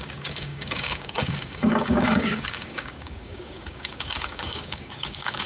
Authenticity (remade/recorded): remade